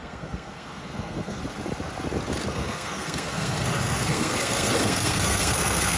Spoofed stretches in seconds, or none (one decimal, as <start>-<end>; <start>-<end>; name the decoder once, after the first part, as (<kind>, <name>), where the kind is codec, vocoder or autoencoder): 0.0-1.4 (codec, SNAC); 2.5-6.0